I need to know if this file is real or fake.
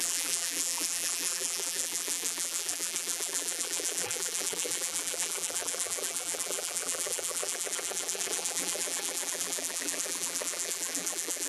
fake